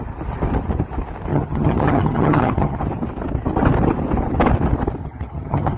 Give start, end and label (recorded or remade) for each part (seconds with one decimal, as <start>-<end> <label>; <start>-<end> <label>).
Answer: 0.0-1.3 recorded; 1.3-2.8 remade; 2.8-5.0 recorded; 5.0-5.8 remade